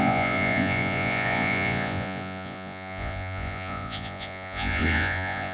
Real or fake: fake